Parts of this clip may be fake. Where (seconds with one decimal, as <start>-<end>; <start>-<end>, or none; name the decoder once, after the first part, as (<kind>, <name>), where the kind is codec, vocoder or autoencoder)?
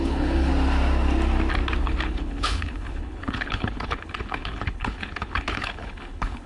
0.0-0.5 (codec, HILCodec); 1.8-6.5